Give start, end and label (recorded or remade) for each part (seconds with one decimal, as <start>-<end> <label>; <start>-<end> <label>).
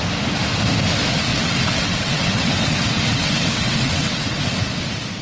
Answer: 0.0-1.3 recorded; 1.3-4.4 remade; 4.4-5.2 recorded